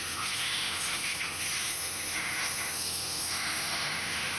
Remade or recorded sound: remade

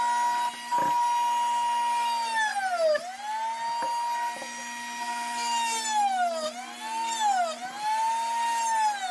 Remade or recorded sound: recorded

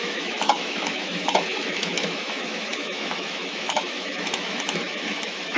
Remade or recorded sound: remade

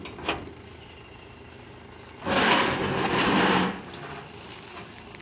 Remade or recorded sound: recorded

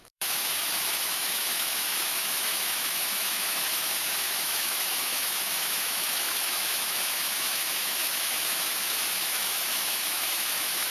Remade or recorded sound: remade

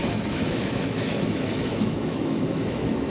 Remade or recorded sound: remade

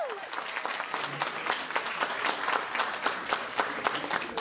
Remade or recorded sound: recorded